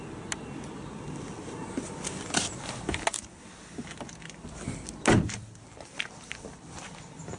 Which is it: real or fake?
real